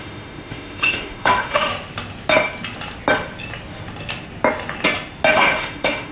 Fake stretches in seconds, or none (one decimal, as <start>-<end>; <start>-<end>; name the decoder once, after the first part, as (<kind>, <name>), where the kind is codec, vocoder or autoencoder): 0.0-1.7 (autoencoder, DAC-VAE); 5.3-6.1